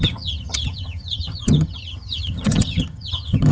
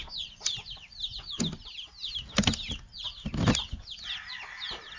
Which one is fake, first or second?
first